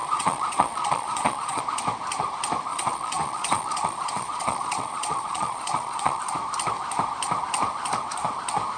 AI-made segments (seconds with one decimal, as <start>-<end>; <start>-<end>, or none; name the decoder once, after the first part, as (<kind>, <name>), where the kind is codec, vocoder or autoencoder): 0.0-1.6 (vocoder, Vocos); 2.7-6.2

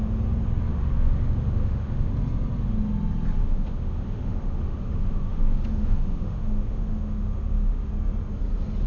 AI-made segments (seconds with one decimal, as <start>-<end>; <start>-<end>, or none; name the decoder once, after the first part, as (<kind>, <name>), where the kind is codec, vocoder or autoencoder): 0.7-2.1 (autoencoder, DAC-VAE); 3.4-7.9

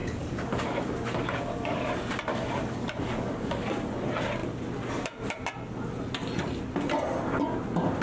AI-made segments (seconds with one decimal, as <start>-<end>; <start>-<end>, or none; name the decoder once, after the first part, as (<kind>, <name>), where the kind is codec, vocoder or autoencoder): 0.0-1.9 (codec, DAC); 2.3-3.9

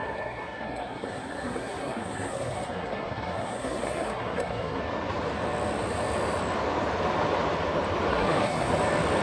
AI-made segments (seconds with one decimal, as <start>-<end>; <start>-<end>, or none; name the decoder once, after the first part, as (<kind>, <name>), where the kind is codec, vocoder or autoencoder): 0.0-4.8 (codec, SNAC); 8.1-8.7

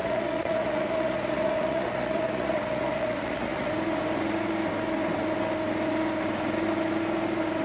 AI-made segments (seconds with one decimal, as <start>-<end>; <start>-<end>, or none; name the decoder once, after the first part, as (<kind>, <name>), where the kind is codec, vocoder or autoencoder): 0.0-3.7 (vocoder, Vocos)

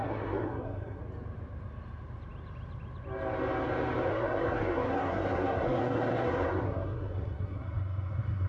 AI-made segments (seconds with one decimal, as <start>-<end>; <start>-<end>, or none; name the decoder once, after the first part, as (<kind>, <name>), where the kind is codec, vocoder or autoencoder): 0.0-1.0 (codec, SNAC); 4.1-8.5

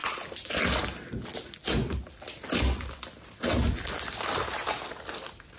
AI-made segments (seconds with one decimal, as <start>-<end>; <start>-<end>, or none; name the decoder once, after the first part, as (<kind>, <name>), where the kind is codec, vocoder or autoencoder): none

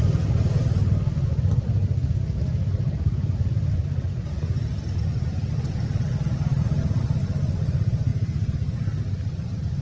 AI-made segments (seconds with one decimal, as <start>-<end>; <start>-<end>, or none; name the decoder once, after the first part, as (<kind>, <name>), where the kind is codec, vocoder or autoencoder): none